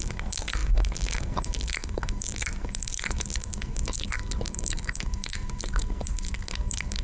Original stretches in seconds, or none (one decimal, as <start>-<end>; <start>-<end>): none